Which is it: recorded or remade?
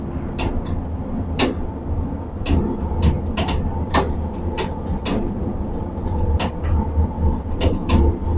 recorded